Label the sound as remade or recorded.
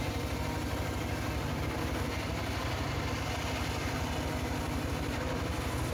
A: recorded